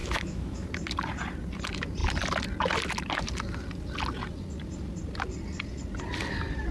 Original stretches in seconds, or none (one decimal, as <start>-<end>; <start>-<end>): 0.7-6.7